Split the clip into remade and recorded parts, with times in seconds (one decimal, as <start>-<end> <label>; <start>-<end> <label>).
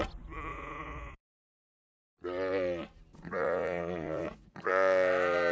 0.0-0.5 recorded; 0.5-1.5 remade; 1.5-3.1 recorded; 3.1-4.7 remade; 4.7-5.5 recorded